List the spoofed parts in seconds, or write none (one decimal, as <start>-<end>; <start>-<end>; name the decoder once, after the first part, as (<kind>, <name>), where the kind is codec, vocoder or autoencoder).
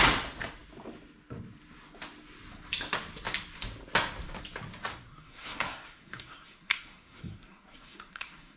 4.9-8.6 (codec, SNAC)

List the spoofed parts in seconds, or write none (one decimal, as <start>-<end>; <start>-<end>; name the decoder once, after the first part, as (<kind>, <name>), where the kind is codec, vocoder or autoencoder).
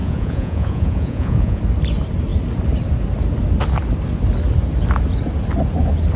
0.0-1.6 (vocoder, Vocos)